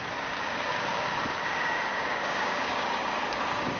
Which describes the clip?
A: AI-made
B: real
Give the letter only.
A